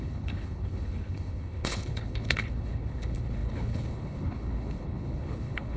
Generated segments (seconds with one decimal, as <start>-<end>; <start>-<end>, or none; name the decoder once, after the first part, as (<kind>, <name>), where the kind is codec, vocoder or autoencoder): 0.0-5.8 (codec, HILCodec)